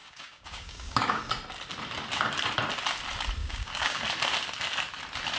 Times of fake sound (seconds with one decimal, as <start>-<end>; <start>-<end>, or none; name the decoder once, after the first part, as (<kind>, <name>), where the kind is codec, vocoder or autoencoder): 0.0-1.2 (codec, DAC); 3.4-4.0